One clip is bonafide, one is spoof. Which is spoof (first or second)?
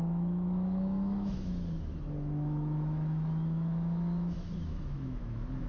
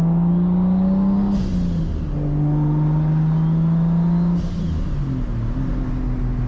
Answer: first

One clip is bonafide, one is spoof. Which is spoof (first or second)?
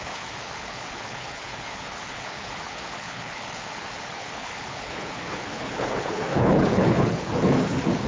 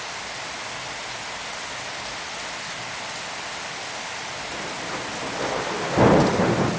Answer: first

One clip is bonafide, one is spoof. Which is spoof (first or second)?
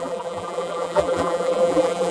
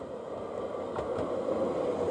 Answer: first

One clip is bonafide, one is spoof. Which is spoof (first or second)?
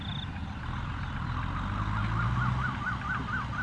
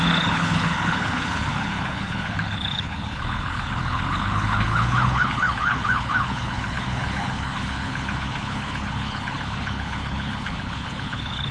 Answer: second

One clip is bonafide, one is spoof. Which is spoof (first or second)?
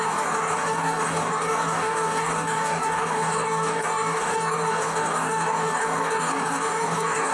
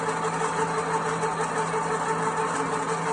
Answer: first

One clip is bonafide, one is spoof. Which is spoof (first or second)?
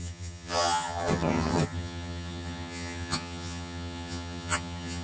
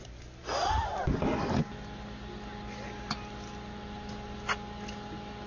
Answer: first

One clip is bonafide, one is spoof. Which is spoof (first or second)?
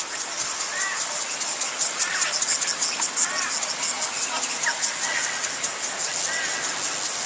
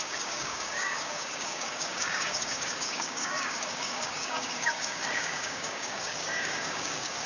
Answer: second